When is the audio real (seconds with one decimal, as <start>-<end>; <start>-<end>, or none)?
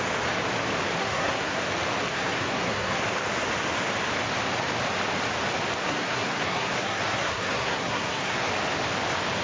0.0-1.0; 1.7-2.1; 3.0-5.8; 8.5-9.4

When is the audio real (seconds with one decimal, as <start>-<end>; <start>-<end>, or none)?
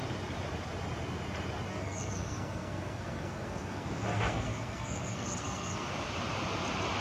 0.0-1.7; 5.9-7.0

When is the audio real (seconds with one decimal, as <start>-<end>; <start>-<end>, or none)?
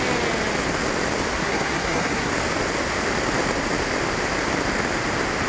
0.0-1.4; 2.3-5.5